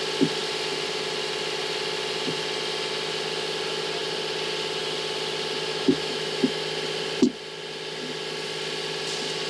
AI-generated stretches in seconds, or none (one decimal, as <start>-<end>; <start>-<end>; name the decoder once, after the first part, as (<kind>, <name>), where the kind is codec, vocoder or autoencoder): 5.7-6.6 (autoencoder, DAC-VAE)